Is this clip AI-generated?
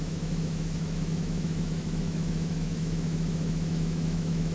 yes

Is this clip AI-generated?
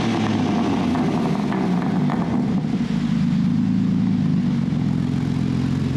no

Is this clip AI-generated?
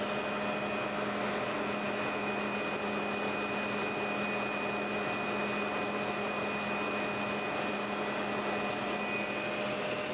no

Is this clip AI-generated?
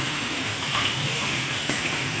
yes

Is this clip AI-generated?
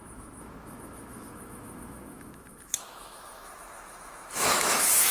yes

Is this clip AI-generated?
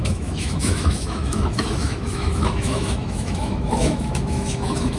yes